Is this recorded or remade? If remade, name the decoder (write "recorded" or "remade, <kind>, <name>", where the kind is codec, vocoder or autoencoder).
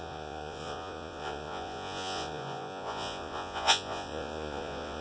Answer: remade, vocoder, Vocos